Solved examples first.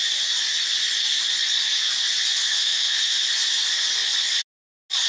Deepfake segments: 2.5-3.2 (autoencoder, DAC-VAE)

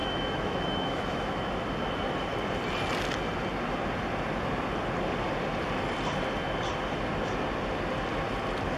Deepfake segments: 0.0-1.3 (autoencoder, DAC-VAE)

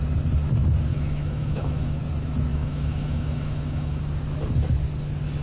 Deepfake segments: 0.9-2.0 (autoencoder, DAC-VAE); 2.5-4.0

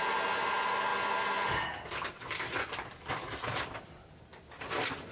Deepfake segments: none